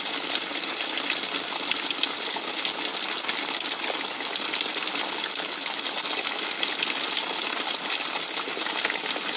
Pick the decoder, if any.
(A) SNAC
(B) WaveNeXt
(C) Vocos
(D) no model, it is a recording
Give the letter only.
D